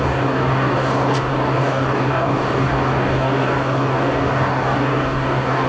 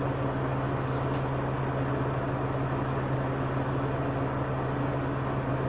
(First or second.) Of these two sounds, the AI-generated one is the first